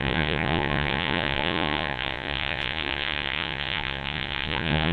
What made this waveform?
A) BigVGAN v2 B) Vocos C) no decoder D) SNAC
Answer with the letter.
B